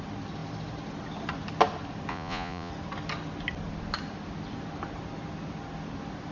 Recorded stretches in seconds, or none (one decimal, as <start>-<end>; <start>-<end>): 0.0-2.1; 2.7-6.3